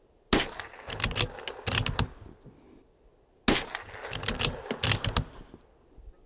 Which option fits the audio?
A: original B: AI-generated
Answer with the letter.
A